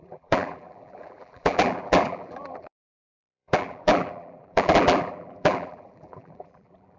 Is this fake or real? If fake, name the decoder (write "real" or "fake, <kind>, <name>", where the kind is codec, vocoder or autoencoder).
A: fake, vocoder, BigVGAN v2